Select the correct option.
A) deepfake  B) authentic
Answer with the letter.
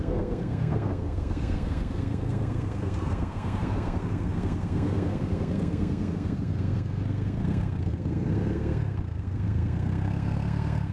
A